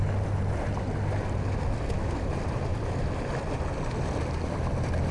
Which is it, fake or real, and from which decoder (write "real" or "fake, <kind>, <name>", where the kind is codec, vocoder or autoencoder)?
real